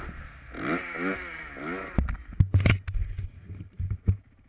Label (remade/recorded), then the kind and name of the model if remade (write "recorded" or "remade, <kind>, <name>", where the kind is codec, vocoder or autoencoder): recorded